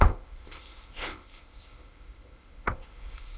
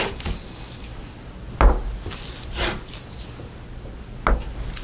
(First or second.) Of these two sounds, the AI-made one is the first